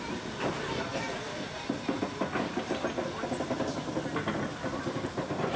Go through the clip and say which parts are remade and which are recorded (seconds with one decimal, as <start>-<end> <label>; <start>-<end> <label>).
0.0-5.6 recorded